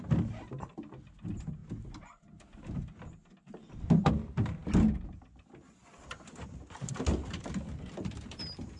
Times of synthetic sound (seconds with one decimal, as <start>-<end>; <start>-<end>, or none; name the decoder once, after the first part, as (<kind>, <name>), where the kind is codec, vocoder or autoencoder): none